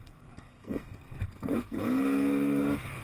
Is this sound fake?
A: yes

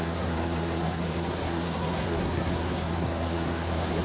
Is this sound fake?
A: yes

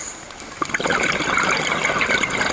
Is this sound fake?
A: no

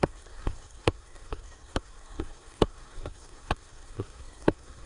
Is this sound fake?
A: yes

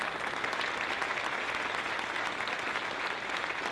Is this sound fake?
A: no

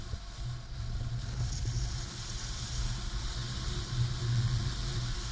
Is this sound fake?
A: no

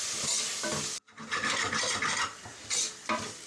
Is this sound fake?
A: yes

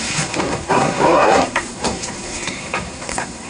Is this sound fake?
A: yes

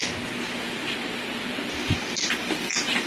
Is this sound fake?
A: no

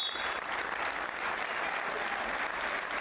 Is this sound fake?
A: no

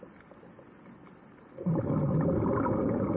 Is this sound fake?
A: no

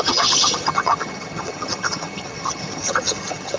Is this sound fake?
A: yes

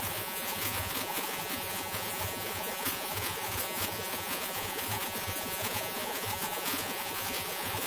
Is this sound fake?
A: yes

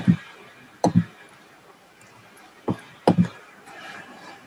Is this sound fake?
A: yes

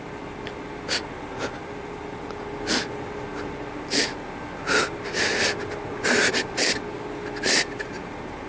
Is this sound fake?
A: no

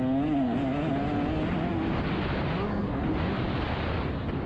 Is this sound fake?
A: no